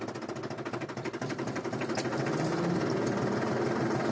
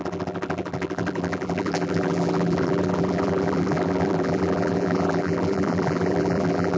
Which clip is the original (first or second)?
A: first